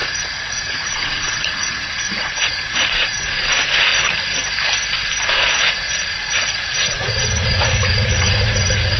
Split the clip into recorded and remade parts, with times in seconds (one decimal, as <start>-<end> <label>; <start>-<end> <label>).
0.0-3.9 remade; 3.9-5.3 recorded; 5.3-9.0 remade